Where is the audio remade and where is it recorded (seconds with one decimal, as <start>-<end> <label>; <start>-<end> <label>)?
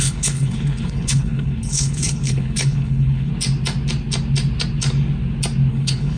0.0-3.3 remade; 3.3-5.7 recorded; 5.7-6.2 remade